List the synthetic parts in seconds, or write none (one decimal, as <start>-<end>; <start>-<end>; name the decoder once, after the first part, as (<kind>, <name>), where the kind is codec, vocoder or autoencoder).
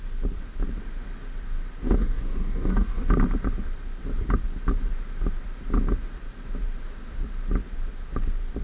1.8-3.1 (codec, DAC)